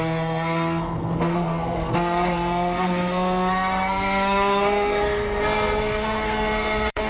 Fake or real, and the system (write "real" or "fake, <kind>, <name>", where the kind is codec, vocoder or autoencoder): fake, codec, SNAC